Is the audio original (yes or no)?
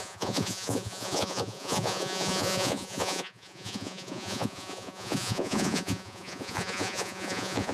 no